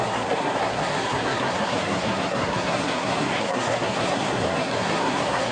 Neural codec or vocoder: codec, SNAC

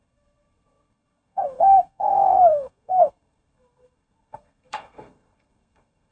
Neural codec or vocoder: codec, SNAC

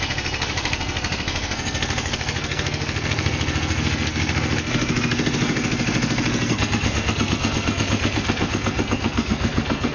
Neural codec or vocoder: codec, SNAC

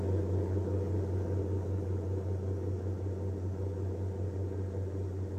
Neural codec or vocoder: none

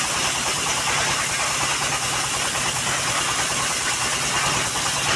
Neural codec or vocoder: none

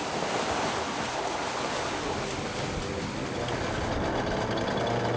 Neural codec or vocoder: none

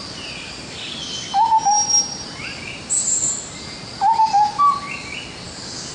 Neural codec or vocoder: none